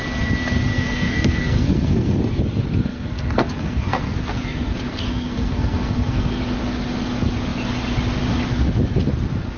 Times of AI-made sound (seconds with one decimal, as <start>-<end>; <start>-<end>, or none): 0.7-2.4; 2.9-6.4